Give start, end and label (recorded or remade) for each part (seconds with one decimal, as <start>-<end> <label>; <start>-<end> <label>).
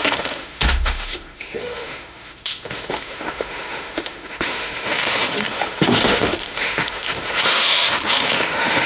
0.0-8.9 remade